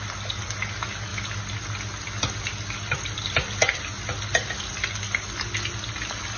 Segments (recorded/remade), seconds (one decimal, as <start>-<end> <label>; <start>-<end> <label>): 0.0-6.4 recorded